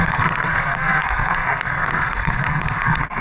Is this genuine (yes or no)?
no